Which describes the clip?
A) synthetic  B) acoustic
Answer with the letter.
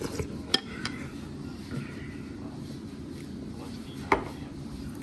B